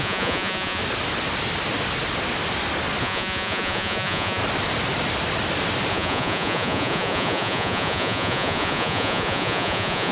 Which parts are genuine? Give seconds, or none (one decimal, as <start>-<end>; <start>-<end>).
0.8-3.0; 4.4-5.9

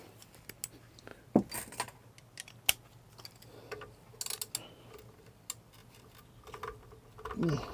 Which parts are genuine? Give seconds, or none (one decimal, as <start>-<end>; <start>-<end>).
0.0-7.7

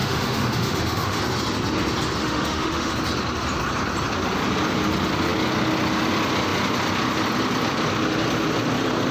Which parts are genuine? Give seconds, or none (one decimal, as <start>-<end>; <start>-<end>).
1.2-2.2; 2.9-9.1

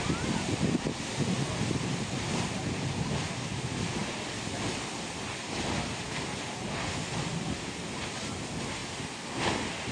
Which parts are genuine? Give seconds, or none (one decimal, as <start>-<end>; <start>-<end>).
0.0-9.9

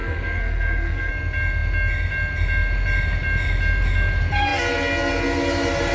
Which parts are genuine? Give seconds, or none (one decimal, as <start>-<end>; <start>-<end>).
1.1-5.9

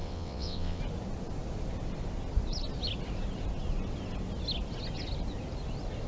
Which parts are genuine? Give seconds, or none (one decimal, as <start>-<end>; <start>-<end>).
0.8-6.1